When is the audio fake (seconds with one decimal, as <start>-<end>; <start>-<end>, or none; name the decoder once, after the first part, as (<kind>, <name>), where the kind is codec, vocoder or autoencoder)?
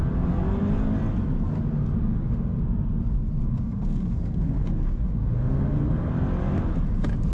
2.1-2.6 (codec, SNAC); 3.4-6.1